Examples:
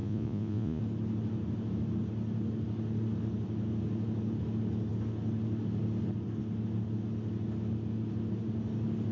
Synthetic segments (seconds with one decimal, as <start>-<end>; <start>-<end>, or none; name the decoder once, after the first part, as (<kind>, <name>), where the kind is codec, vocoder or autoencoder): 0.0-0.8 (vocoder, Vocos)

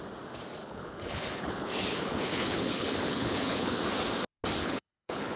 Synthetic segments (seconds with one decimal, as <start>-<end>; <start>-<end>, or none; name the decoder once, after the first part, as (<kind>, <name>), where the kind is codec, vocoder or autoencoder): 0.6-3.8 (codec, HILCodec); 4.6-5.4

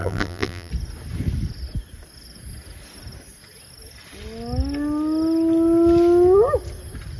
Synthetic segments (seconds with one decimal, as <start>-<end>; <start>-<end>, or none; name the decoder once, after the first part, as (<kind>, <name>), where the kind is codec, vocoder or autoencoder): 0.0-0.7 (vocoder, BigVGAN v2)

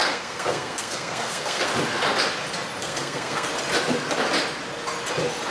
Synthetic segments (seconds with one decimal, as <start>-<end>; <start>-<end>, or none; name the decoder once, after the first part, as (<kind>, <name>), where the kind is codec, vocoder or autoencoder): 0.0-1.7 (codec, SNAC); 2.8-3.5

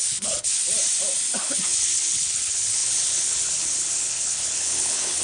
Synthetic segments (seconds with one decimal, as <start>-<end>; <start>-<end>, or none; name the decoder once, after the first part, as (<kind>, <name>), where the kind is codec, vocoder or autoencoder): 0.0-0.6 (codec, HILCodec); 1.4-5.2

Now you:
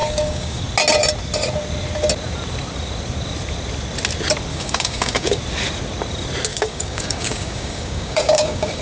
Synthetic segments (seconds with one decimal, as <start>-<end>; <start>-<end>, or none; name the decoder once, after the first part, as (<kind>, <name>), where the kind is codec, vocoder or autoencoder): 0.0-0.6 (codec, DAC); 4.5-5.4; 6.5-8.8

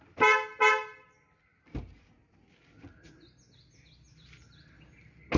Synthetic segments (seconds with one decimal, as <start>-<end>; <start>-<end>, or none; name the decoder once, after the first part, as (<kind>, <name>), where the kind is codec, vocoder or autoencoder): none